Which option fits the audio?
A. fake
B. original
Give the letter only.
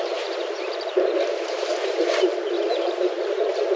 A